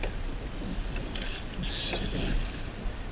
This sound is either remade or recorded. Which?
recorded